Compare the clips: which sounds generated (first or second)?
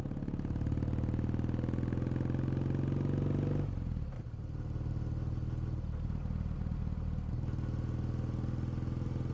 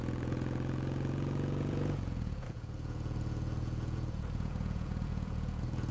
second